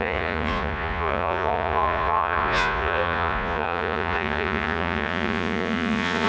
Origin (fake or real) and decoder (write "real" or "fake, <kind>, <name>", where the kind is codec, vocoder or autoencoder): fake, vocoder, Vocos